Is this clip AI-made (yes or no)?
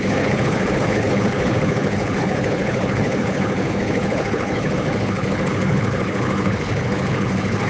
yes